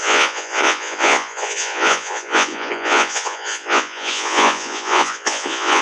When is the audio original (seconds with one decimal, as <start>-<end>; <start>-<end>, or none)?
none